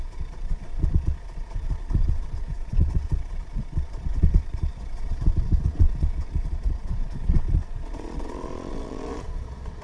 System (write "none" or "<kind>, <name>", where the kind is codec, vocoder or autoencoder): vocoder, Vocos